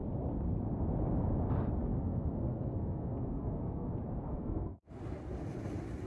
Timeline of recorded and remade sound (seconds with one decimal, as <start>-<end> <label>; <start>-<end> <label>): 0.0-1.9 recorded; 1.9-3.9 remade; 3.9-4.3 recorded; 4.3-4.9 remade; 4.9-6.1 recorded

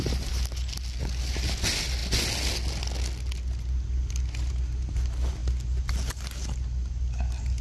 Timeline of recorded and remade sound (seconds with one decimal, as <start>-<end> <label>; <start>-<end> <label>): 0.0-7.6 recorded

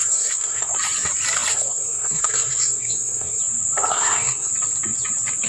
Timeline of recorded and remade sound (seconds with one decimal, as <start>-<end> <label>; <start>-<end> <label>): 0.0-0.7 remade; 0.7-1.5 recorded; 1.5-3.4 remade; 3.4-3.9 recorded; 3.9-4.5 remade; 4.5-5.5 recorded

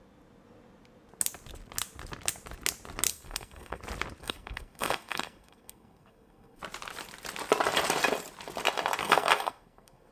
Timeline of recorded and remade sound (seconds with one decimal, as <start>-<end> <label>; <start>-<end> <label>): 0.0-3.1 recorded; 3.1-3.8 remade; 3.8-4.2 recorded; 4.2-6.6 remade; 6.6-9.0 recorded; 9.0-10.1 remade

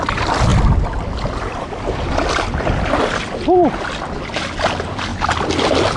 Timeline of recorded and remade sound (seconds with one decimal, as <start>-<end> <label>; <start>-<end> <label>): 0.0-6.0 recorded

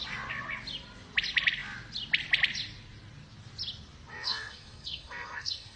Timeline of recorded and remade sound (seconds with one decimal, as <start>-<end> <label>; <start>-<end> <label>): 0.0-4.1 recorded; 4.1-5.8 remade